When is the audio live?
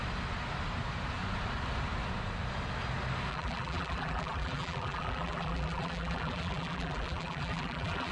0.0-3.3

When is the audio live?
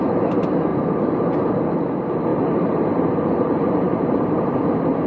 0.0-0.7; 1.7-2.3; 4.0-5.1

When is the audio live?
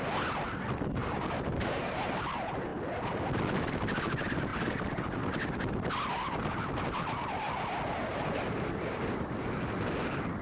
0.0-1.0; 2.2-8.0; 9.4-10.4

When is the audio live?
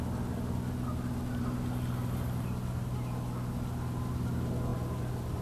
0.0-5.4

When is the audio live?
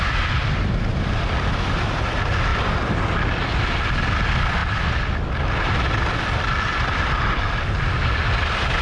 0.0-0.4; 1.8-8.8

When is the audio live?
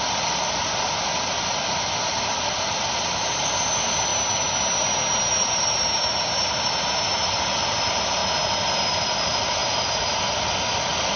4.1-5.3; 8.2-9.1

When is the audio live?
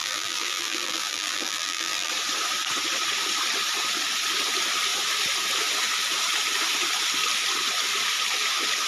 2.1-8.9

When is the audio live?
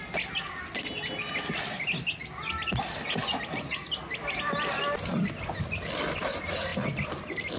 0.0-7.6